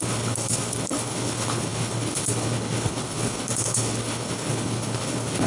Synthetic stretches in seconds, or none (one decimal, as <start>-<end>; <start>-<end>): 0.0-5.5